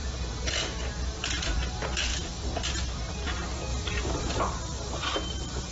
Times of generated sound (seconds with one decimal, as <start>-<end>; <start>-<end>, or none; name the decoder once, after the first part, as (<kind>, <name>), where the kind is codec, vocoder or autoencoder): 2.1-2.7 (vocoder, BigVGAN v2); 3.7-4.4

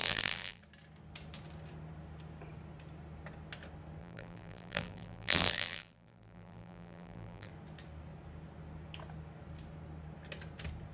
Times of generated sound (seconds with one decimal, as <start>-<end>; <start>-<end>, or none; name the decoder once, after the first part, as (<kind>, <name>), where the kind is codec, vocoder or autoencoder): 0.0-0.6 (vocoder, BigVGAN v2); 4.0-7.5

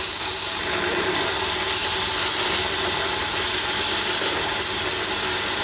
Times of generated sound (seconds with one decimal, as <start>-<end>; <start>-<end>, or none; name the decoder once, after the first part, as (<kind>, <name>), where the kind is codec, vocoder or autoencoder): 0.0-1.8 (vocoder, BigVGAN v2)

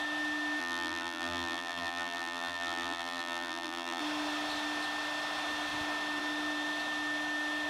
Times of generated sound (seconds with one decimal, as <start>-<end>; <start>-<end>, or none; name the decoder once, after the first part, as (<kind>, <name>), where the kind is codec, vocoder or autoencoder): 0.6-4.0 (vocoder, BigVGAN v2)

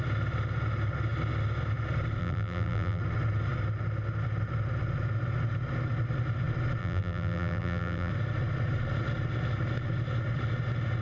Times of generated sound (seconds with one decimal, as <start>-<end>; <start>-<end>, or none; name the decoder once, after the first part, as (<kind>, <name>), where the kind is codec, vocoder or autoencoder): 2.2-3.0 (vocoder, BigVGAN v2); 6.8-8.1

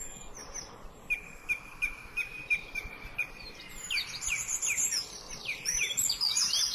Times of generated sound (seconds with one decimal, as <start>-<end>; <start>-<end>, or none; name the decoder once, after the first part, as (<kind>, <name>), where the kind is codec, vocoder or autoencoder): 0.4-4.4 (vocoder, BigVGAN v2); 5.4-6.0

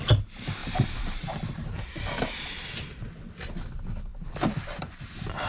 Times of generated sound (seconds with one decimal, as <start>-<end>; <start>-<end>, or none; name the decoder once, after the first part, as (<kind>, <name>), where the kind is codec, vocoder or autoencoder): 0.6-1.8 (vocoder, BigVGAN v2)

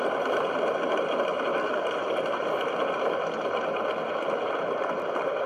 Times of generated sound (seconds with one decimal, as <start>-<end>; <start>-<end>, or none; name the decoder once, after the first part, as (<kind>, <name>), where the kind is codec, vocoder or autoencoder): none